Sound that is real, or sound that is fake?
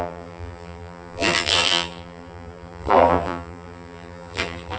fake